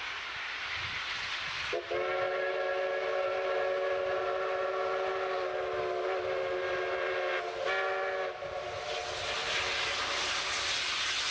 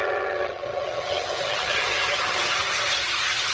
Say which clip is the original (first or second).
first